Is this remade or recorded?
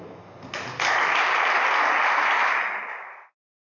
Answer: recorded